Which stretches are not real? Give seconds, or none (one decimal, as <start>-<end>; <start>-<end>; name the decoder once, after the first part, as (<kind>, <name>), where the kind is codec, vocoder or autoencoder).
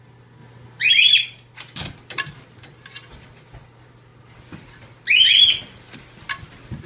none